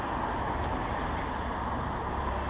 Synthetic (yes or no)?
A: no